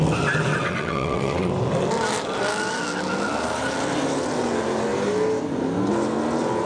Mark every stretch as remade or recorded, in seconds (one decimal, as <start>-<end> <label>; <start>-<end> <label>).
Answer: 0.0-0.5 recorded; 0.5-1.5 remade; 1.5-6.7 recorded